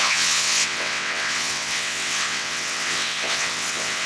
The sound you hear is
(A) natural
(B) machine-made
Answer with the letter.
B